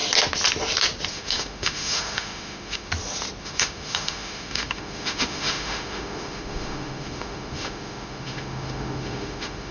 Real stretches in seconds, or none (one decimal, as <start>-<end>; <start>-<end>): 0.0-1.1; 2.9-3.4